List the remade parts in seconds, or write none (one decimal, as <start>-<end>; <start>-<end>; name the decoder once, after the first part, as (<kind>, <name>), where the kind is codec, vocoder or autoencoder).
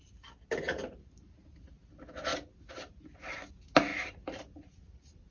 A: 0.8-1.4 (vocoder, BigVGAN v2); 2.3-3.5; 3.9-5.3